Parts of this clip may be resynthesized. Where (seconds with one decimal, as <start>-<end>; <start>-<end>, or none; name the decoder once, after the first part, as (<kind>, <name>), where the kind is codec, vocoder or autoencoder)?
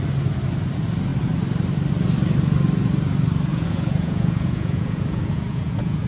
3.5-6.1 (vocoder, Vocos)